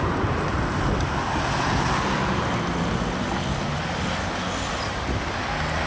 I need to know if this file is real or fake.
real